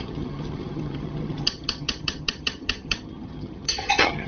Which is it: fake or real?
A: fake